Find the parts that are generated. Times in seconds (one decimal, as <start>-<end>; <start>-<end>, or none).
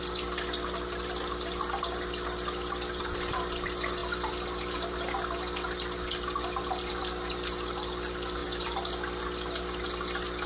none